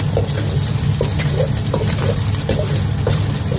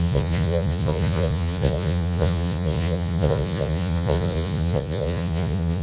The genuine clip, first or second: first